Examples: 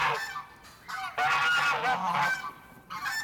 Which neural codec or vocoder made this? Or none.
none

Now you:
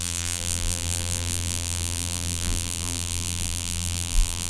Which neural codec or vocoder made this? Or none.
vocoder, BigVGAN v2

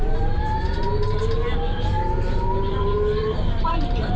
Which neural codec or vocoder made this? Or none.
vocoder, BigVGAN v2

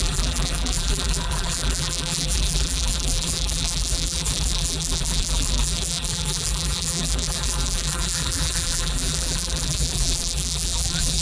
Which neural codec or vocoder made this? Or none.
vocoder, BigVGAN v2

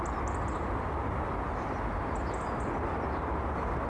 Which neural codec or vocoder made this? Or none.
none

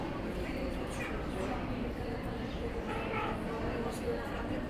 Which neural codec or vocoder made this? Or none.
vocoder, BigVGAN v2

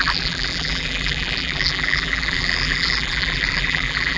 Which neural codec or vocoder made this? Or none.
vocoder, BigVGAN v2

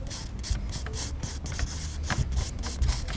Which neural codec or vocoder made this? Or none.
none